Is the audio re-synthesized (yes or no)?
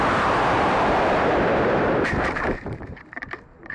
yes